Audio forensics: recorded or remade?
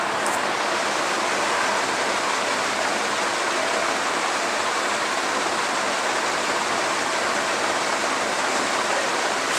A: recorded